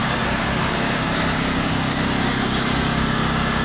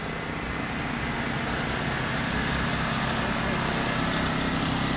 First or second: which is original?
second